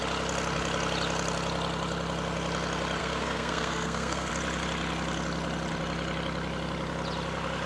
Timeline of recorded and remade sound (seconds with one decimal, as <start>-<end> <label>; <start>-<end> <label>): 0.0-3.0 recorded; 3.0-4.3 remade; 4.3-7.7 recorded